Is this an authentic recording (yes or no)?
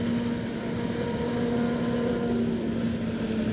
yes